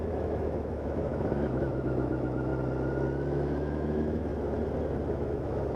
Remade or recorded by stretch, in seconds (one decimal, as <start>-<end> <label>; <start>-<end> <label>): 0.0-2.5 remade; 2.5-3.3 recorded; 3.3-4.3 remade; 4.3-5.1 recorded; 5.1-5.8 remade